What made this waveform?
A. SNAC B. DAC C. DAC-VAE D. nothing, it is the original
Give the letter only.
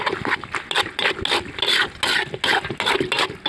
D